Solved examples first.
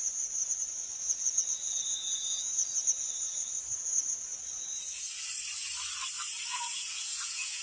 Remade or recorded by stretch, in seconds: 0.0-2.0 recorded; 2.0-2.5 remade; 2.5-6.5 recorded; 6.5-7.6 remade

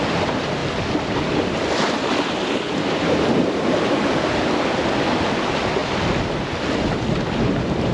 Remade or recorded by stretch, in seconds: 0.0-7.9 recorded

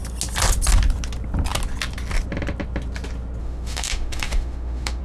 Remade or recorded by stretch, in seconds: 0.0-3.4 recorded; 3.4-5.0 remade

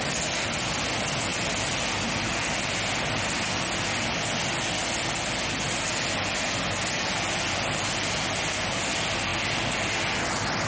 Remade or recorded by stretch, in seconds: 0.0-10.7 recorded

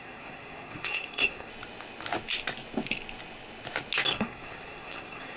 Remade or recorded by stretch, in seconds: 0.0-1.5 remade; 1.5-4.1 recorded; 4.1-5.4 remade

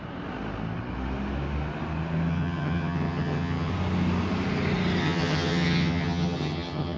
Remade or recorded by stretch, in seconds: 0.0-2.3 recorded; 2.3-3.7 remade; 3.7-5.0 recorded; 5.0-7.0 remade

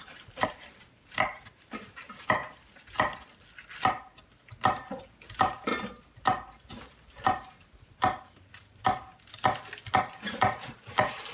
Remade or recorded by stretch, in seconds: 0.0-2.4 remade; 2.4-5.3 recorded; 5.3-9.1 remade; 9.1-10.0 recorded; 10.0-11.3 remade